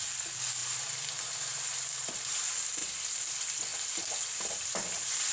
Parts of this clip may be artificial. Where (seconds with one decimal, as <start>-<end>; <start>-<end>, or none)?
0.6-2.3